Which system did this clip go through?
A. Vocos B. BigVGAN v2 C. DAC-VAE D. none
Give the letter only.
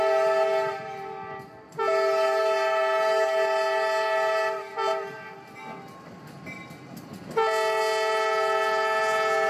D